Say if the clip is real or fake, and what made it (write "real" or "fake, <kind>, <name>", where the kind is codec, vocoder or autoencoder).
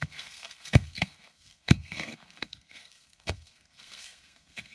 fake, codec, SNAC